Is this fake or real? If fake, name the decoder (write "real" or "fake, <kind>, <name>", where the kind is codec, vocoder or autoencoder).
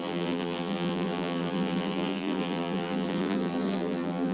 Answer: fake, vocoder, BigVGAN v2